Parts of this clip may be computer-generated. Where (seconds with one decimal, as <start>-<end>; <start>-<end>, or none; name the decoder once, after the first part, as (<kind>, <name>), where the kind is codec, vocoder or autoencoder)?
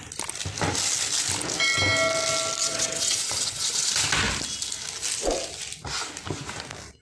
2.6-3.9 (vocoder, WaveNeXt)